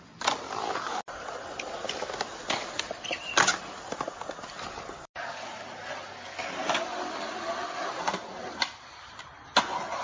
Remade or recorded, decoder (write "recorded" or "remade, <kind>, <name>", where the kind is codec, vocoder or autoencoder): recorded